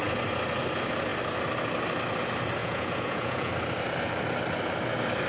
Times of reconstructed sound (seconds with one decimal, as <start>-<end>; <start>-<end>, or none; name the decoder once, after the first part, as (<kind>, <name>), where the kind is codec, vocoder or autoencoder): 2.6-3.5 (vocoder, Vocos)